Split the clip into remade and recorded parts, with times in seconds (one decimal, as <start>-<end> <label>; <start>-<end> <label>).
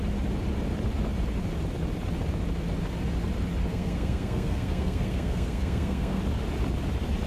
0.0-3.7 recorded; 3.7-6.2 remade; 6.2-7.3 recorded